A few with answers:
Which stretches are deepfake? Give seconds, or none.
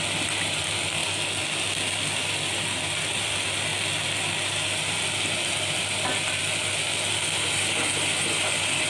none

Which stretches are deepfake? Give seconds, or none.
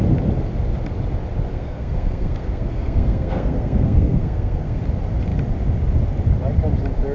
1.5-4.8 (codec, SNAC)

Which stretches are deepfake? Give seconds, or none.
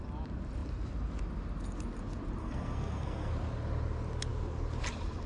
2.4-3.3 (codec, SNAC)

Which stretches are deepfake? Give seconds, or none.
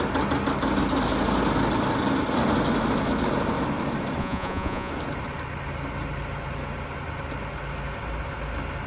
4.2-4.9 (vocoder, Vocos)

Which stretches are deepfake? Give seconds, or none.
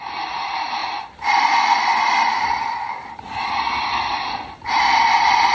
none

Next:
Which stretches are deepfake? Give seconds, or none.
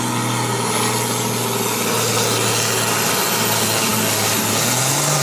none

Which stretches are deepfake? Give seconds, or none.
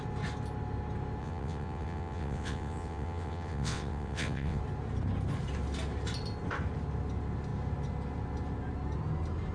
1.2-4.6 (vocoder, WaveNeXt)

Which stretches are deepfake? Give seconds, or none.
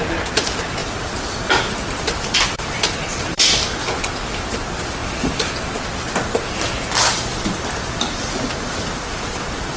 0.8-3.9 (vocoder, BigVGAN v2); 5.0-5.5; 7.3-9.8